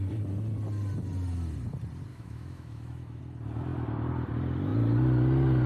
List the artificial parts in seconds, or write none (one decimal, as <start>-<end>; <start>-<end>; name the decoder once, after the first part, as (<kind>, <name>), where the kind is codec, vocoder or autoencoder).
2.1-3.2 (autoencoder, DAC-VAE)

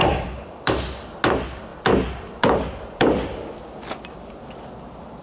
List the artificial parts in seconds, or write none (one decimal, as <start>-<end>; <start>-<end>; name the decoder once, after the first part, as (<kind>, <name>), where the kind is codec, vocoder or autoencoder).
0.0-0.8 (vocoder, BigVGAN v2)